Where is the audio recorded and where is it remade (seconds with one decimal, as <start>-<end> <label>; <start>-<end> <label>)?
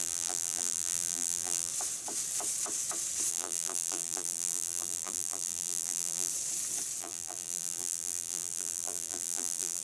0.0-1.7 remade; 1.7-3.3 recorded; 3.3-6.3 remade; 6.3-7.0 recorded; 7.0-9.8 remade